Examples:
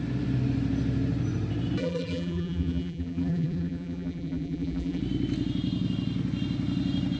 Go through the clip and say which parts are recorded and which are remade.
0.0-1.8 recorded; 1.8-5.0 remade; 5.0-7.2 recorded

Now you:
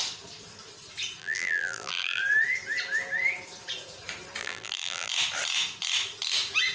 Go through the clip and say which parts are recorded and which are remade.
0.0-1.2 recorded; 1.2-2.2 remade; 2.2-4.4 recorded; 4.4-5.1 remade; 5.1-6.7 recorded

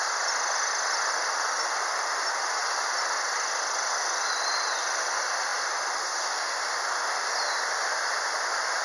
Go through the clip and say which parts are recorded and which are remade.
0.0-2.6 recorded; 2.6-4.3 remade; 4.3-8.8 recorded